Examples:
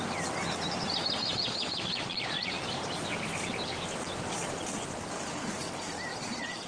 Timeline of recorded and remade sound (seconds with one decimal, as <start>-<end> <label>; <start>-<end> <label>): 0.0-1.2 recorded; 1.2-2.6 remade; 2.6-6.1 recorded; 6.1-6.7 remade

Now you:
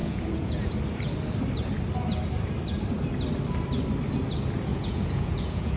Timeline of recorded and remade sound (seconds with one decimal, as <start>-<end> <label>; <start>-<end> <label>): 0.0-0.7 remade; 0.7-4.7 recorded; 4.7-5.8 remade

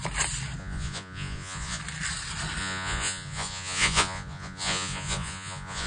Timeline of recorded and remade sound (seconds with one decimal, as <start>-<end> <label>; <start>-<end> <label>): 0.0-0.6 recorded; 0.6-1.8 remade; 1.8-2.6 recorded; 2.6-5.9 remade

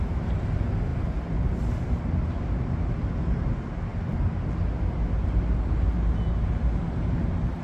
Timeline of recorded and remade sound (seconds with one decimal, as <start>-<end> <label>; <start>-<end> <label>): 0.0-7.6 recorded